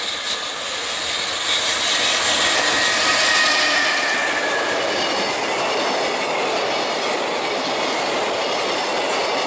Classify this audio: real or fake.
real